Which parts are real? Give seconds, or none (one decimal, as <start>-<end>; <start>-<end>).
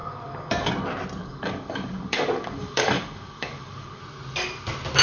0.7-1.2; 4.0-5.0